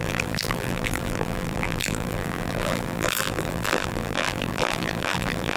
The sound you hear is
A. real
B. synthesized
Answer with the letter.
B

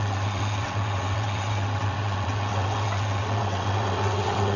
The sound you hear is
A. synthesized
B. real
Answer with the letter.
A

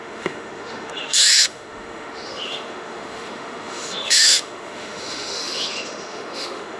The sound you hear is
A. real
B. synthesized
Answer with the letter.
B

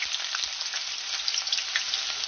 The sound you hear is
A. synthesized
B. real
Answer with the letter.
B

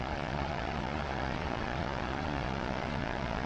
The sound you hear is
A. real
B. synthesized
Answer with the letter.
B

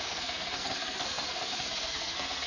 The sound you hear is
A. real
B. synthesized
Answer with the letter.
B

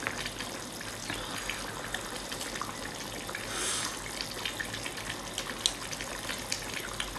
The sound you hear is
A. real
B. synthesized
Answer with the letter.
A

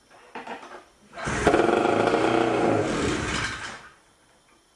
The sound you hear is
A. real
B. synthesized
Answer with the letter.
A